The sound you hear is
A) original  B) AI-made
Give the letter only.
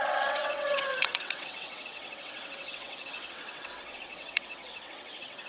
B